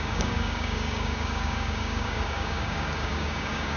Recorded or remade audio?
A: remade